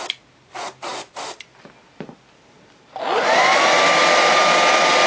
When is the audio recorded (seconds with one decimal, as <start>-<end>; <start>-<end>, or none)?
0.0-5.1